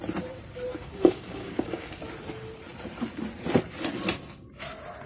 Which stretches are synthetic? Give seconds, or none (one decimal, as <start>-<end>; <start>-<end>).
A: 0.8-2.0